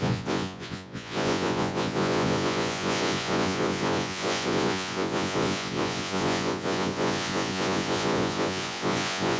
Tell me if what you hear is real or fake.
fake